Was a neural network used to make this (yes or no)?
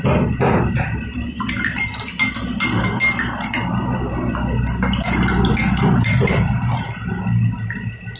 no